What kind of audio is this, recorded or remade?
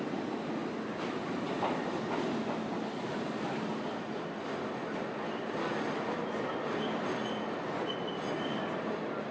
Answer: recorded